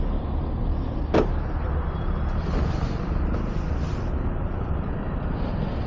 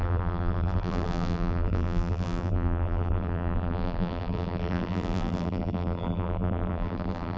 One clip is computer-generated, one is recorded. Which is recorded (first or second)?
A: first